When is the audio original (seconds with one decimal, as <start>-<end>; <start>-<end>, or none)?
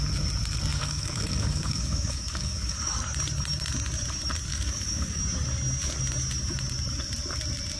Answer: 0.0-0.7; 3.0-4.5; 5.2-7.8